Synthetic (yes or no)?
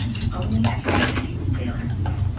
no